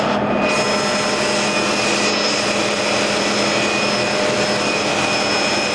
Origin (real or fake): real